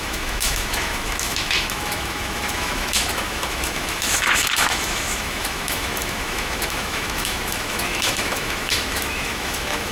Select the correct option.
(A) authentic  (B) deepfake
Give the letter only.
B